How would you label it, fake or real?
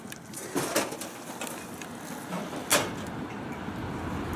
real